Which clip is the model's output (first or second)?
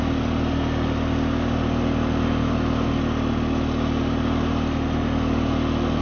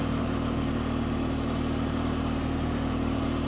second